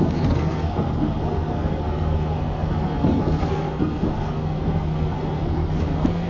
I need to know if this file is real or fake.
fake